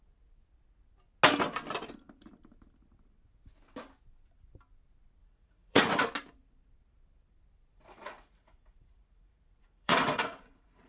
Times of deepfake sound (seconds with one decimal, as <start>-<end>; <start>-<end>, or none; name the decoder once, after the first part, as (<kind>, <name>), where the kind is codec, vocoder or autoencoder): 5.2-5.9 (vocoder, Vocos); 7.7-10.9